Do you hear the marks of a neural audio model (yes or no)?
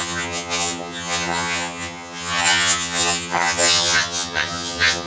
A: yes